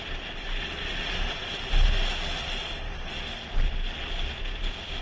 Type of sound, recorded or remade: recorded